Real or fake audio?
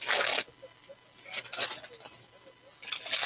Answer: real